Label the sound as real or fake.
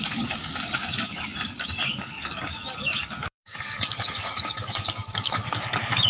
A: fake